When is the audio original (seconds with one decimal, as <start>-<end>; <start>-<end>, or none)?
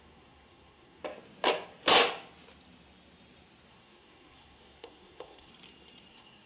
1.0-3.7; 5.5-6.1